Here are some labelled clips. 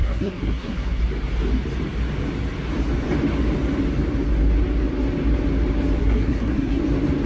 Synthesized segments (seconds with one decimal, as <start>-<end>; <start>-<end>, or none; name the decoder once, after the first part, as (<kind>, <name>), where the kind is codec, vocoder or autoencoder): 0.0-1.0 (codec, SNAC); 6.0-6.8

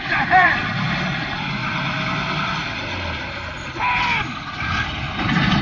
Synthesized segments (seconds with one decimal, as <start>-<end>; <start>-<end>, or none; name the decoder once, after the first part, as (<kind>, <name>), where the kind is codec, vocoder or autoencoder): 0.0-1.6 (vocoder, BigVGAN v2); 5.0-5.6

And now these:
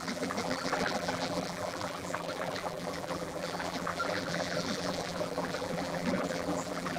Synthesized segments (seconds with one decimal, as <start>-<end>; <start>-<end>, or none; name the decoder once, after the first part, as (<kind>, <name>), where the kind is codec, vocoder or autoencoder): 0.0-7.0 (vocoder, BigVGAN v2)

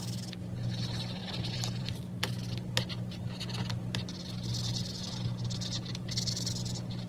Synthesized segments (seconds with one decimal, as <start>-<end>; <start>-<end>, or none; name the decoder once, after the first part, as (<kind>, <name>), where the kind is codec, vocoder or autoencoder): 1.2-2.0 (vocoder, BigVGAN v2)